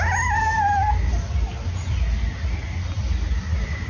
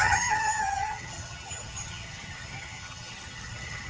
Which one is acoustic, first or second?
first